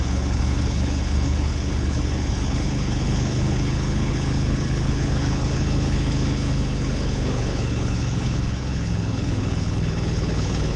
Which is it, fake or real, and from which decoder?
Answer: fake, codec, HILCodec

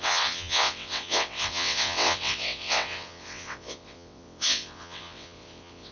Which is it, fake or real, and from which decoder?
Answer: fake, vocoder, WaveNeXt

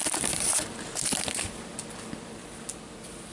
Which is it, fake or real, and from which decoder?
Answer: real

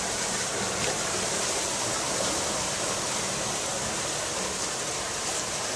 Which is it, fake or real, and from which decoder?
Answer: fake, vocoder, BigVGAN v2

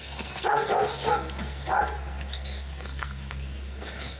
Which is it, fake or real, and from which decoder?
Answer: fake, codec, SNAC